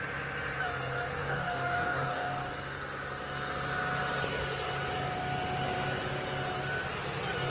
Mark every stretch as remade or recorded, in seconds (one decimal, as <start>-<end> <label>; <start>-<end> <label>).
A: 0.0-1.2 recorded; 1.2-2.5 remade; 2.5-7.5 recorded